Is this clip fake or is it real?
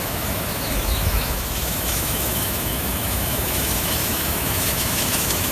fake